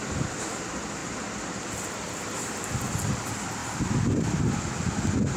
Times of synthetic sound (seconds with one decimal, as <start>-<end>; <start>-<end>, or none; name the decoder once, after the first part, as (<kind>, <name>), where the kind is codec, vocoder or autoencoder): none